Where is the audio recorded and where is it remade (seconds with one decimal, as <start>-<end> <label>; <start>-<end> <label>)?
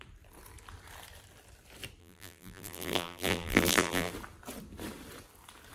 0.0-2.0 recorded; 2.0-4.1 remade; 4.1-5.7 recorded